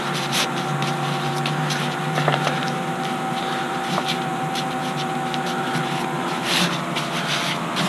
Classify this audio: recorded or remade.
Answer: remade